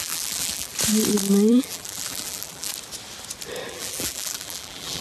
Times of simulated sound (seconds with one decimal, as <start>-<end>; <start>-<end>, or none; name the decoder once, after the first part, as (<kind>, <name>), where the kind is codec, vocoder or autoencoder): 0.0-0.7 (vocoder, BigVGAN v2); 1.5-2.7; 3.7-5.0